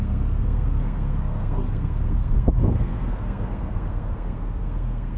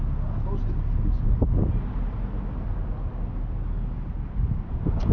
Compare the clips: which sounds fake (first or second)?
first